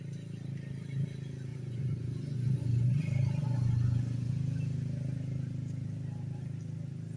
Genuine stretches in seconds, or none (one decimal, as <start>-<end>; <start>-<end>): 0.0-1.5; 3.0-3.4; 4.3-7.2